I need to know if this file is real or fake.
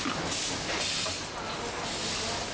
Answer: real